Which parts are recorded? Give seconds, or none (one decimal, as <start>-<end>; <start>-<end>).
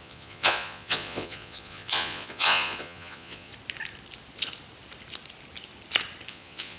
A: 3.5-6.3